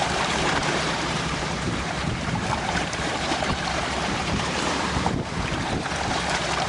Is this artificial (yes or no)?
yes